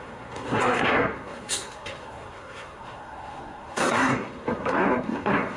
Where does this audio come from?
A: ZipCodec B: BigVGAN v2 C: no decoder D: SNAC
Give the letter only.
D